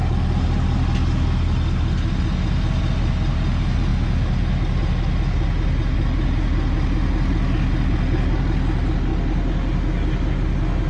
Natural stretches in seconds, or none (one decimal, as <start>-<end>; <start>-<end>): 0.0-10.9